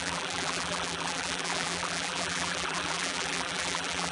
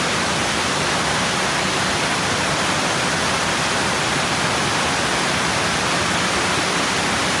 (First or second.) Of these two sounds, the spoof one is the first